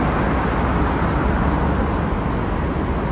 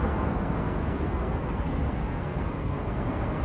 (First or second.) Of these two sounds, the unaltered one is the first